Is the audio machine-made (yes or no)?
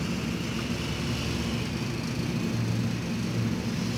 no